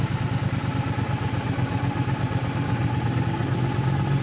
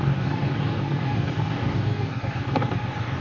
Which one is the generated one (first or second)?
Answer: second